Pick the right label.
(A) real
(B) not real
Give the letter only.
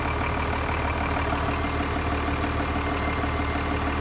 A